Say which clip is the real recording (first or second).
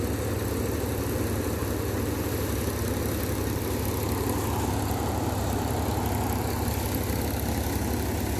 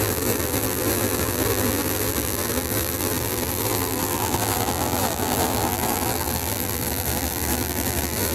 first